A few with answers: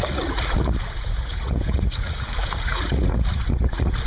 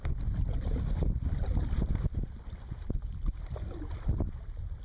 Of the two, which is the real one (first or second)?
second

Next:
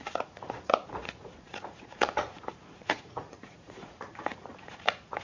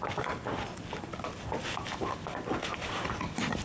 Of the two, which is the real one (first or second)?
second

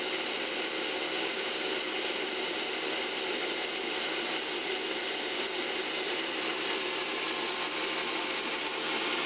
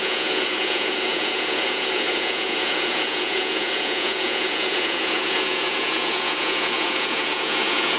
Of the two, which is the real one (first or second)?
first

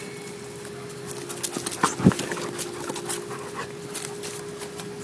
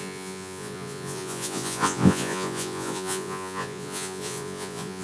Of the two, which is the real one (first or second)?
first